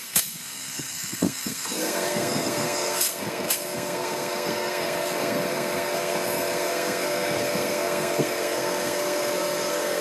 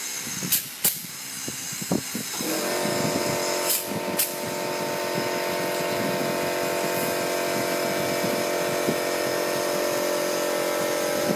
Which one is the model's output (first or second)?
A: first